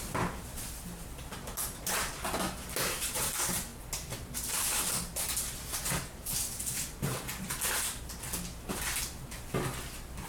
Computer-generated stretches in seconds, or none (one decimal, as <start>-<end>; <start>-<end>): 3.7-8.2